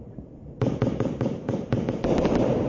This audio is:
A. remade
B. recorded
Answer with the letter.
A